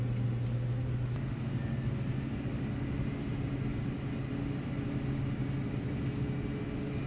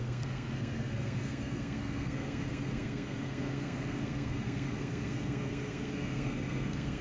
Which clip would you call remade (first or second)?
second